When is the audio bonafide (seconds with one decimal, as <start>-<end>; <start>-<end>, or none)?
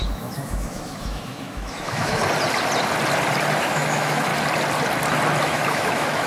2.2-3.6; 4.3-5.4